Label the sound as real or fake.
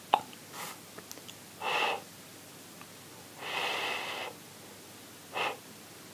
real